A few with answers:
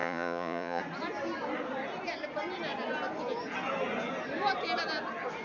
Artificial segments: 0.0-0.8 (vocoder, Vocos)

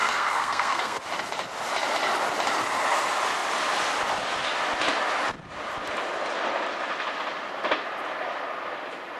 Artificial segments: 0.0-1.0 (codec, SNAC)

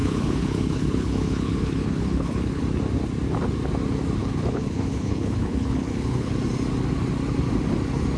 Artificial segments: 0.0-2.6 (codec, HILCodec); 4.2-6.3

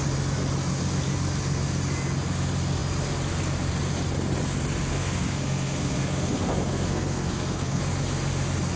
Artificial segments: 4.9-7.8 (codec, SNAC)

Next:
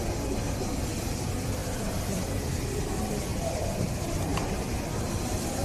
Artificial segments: 3.3-3.9 (vocoder, BigVGAN v2); 4.3-5.6

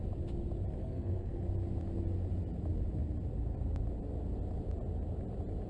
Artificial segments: 0.8-1.4 (codec, SNAC)